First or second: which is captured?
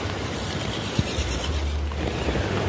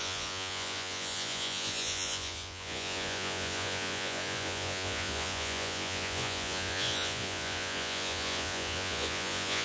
first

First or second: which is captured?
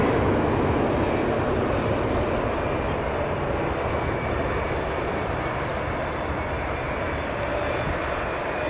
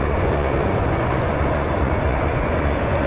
first